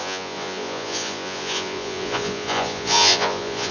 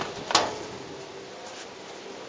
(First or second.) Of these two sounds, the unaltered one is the second